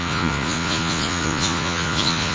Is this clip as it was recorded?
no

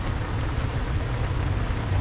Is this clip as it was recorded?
yes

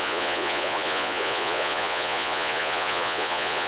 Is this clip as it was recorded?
no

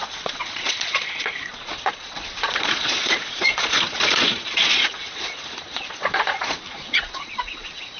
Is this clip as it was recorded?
no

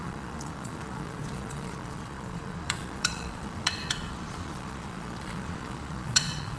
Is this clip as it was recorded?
no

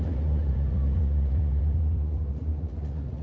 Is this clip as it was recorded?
no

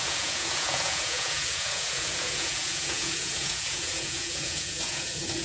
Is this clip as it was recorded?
no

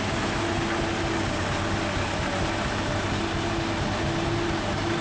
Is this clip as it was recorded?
yes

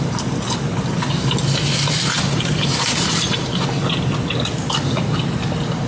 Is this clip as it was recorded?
yes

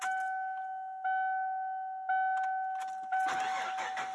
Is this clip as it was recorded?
yes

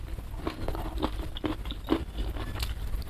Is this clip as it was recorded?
yes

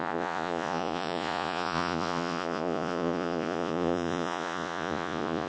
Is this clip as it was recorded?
no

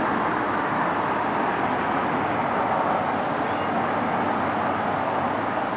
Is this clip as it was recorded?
yes